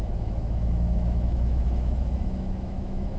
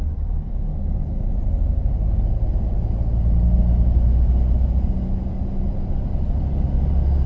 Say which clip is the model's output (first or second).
first